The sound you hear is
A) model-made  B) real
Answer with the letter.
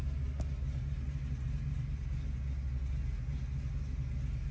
B